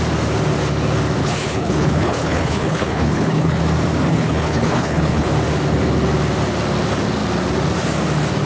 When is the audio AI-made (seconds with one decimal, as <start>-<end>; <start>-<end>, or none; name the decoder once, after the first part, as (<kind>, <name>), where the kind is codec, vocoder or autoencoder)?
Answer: 1.2-3.6 (codec, HILCodec); 4.1-5.3